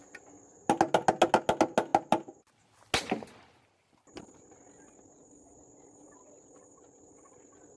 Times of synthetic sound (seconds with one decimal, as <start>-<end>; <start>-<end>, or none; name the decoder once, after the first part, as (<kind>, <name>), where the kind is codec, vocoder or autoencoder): none